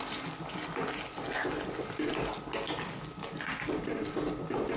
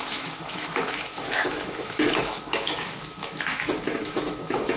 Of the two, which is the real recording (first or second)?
first